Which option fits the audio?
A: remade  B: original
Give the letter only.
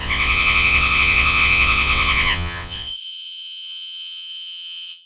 A